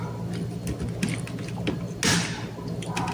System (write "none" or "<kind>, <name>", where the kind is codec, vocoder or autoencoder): none